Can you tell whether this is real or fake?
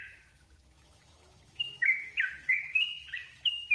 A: fake